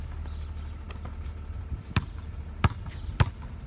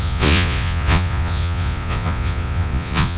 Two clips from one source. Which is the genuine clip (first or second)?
first